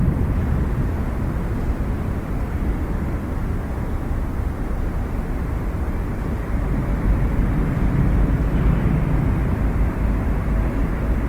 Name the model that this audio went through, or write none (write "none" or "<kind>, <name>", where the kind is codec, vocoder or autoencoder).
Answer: none